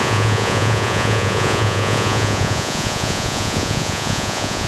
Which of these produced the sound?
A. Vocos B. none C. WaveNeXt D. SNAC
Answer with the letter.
A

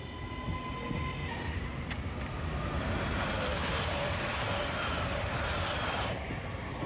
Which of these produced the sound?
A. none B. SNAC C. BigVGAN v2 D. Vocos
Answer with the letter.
A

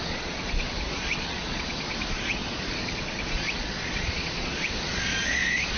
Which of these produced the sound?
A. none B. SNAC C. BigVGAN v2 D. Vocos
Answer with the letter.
D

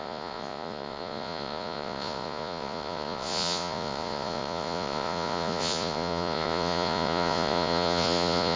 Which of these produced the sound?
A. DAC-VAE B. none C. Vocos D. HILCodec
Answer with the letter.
C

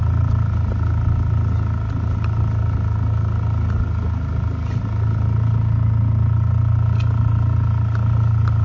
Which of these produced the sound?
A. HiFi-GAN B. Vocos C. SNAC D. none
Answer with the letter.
D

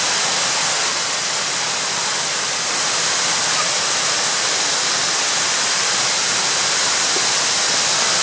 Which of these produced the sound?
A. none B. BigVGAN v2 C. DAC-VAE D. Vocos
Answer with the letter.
A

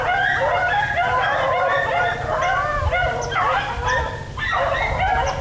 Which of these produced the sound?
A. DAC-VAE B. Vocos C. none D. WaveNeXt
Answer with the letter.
C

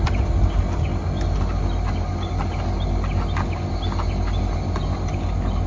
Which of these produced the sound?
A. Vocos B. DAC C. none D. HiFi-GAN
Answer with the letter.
C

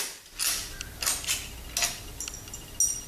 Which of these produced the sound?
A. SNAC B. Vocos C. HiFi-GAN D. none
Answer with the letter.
D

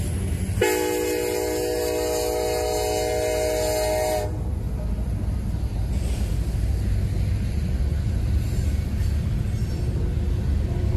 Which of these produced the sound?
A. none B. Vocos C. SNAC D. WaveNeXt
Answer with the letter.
A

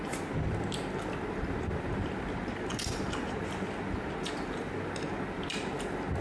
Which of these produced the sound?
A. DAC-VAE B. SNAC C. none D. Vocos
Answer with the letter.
C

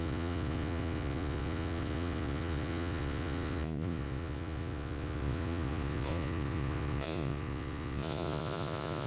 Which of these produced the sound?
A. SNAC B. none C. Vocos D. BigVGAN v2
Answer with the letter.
C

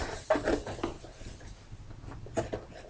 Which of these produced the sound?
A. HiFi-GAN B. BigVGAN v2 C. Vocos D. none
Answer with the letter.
D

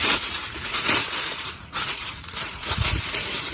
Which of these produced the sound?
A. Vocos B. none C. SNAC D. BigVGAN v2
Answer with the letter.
A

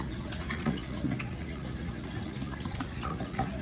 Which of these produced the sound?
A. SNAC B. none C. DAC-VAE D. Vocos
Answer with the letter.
D